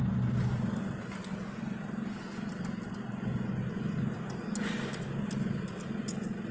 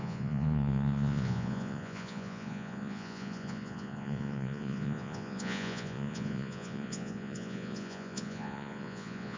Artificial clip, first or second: second